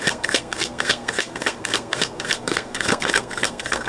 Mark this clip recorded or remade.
remade